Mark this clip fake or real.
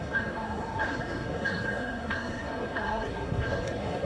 fake